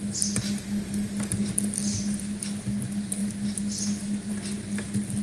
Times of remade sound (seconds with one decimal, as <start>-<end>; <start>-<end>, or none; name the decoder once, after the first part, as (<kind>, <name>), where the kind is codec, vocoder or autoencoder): none